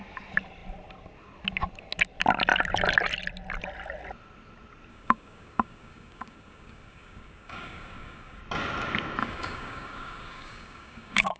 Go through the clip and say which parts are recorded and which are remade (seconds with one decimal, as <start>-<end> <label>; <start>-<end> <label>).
0.0-4.9 recorded; 4.9-8.4 remade; 8.4-9.2 recorded; 9.2-11.4 remade